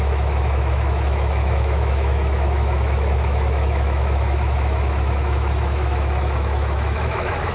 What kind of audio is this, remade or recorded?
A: remade